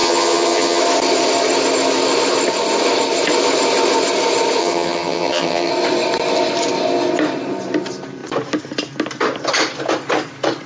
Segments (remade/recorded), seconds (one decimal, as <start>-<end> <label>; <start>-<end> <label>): 0.0-0.8 remade; 0.8-4.6 recorded; 4.6-5.7 remade; 5.7-10.7 recorded